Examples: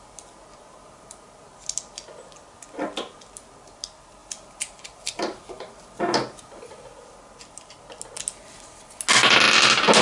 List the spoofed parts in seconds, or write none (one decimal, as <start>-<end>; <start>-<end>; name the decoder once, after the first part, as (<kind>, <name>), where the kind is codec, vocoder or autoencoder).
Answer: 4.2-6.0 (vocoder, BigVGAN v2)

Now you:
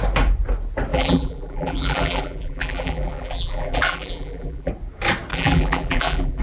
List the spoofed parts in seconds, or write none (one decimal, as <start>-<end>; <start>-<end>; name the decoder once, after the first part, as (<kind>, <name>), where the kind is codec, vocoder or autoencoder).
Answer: 0.9-4.7 (vocoder, BigVGAN v2); 5.3-6.4

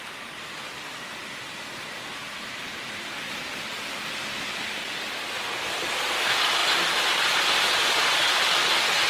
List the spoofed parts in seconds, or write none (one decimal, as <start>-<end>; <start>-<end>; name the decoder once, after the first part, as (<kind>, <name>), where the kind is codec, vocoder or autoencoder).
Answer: 2.1-2.6 (vocoder, BigVGAN v2); 6.6-8.7

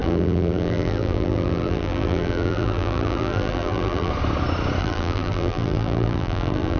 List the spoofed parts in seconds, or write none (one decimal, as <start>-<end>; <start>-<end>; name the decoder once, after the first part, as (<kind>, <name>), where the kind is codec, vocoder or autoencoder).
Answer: 0.0-4.1 (vocoder, BigVGAN v2); 4.8-6.8

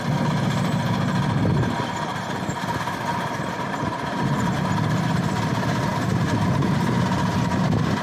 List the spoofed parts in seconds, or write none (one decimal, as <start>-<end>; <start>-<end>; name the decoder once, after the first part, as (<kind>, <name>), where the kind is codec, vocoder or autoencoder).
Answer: 2.1-4.5 (vocoder, BigVGAN v2)

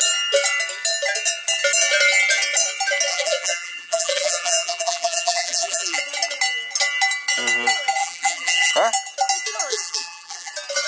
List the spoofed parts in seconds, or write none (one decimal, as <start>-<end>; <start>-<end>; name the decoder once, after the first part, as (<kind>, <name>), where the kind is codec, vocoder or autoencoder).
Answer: 3.1-6.0 (vocoder, BigVGAN v2); 8.0-8.7; 9.7-10.5

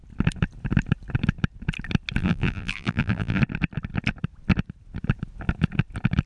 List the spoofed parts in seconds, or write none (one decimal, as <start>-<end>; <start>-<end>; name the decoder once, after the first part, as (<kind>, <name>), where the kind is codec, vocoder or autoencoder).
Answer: 2.2-3.4 (vocoder, BigVGAN v2)

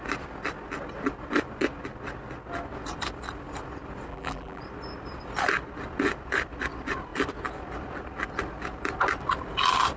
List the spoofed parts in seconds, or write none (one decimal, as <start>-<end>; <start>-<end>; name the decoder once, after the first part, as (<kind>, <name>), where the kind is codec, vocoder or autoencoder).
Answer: 4.1-4.6 (vocoder, BigVGAN v2)